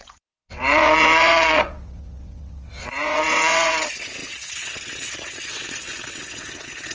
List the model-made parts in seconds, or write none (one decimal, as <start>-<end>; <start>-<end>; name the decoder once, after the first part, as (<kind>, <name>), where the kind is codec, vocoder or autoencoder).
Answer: 0.0-6.9 (vocoder, WaveNeXt)